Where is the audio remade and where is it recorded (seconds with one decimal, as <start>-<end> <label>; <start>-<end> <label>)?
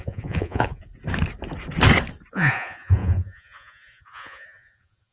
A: 0.0-0.9 remade; 0.9-2.3 recorded; 2.3-5.1 remade